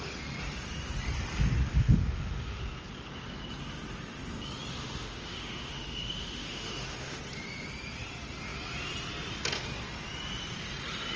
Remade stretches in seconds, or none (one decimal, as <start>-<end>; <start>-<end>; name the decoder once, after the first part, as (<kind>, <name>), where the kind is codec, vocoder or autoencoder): 1.7-2.6 (autoencoder, DAC-VAE); 4.7-7.2